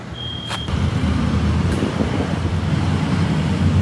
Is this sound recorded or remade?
remade